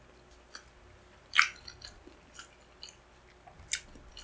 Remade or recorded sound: recorded